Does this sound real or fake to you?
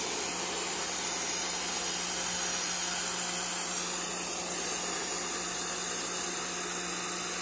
real